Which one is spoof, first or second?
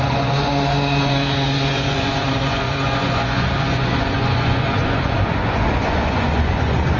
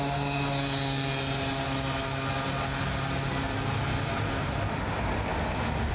first